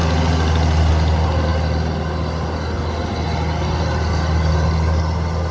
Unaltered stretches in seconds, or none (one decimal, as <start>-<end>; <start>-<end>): 0.0-5.5